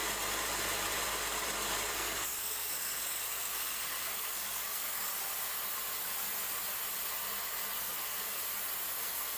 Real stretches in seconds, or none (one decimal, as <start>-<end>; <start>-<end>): 0.0-1.9; 5.1-7.8; 8.4-9.0